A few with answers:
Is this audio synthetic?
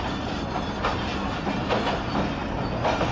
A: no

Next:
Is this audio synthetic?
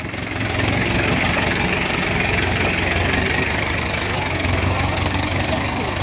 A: yes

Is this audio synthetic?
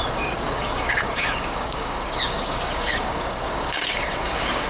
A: yes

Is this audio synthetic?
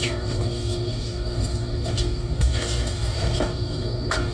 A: yes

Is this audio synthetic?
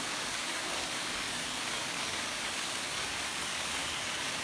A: yes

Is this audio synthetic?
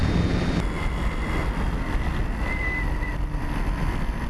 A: no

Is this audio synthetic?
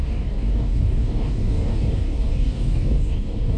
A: yes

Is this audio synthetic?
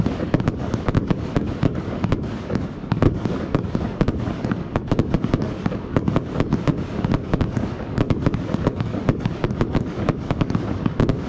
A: yes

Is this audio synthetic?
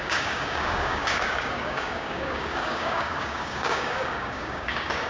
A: yes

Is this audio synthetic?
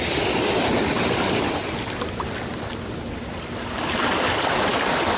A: no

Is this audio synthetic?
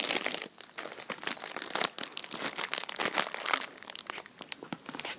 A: no